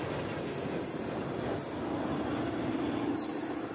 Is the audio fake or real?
real